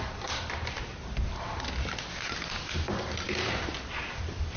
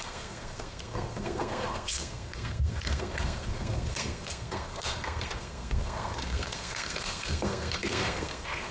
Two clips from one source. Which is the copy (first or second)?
second